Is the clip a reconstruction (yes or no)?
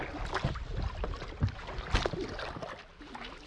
no